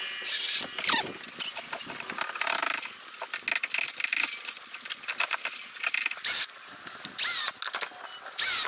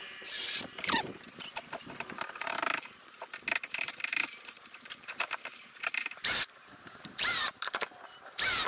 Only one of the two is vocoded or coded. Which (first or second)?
second